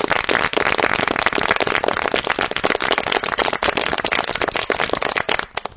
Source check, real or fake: real